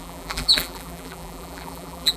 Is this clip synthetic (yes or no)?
yes